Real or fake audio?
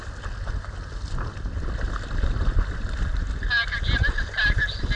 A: real